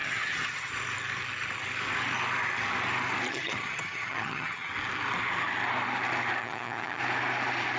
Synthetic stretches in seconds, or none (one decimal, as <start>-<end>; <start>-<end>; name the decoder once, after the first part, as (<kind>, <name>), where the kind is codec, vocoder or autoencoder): 0.0-0.7 (vocoder, HiFi-GAN); 3.3-4.7; 6.4-7.0

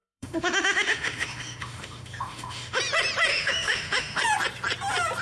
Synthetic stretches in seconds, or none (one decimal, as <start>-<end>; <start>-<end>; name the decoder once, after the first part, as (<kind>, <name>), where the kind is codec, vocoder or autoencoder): 0.0-2.8 (autoencoder, DAC-VAE); 3.3-4.2

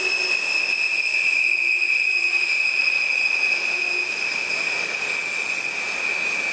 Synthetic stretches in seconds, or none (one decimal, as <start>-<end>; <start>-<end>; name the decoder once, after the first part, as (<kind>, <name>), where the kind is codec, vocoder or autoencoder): 1.1-3.7 (vocoder, Vocos); 5.2-5.7

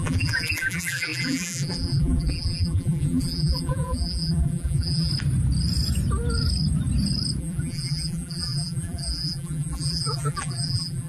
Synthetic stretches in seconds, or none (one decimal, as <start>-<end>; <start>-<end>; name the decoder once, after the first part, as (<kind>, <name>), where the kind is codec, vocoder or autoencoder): 0.0-5.1 (vocoder, BigVGAN v2); 7.4-11.1

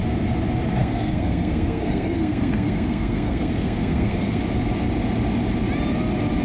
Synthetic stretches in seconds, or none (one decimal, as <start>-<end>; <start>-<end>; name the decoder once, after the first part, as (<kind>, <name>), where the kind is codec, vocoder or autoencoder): 0.8-4.4 (codec, SNAC)